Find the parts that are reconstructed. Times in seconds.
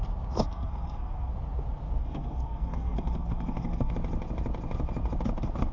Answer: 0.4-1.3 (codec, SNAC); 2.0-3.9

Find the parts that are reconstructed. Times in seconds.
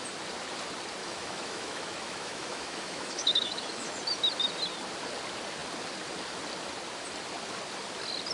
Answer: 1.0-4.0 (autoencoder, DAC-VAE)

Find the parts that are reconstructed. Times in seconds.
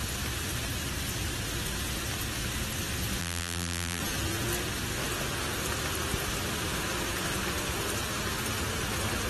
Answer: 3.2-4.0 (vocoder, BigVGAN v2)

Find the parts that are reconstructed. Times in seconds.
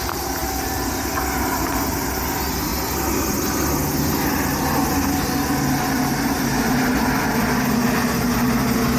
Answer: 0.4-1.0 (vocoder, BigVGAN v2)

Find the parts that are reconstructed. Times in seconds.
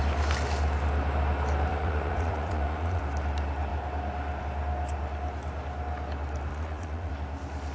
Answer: 1.7-3.0 (vocoder, Vocos); 6.5-7.1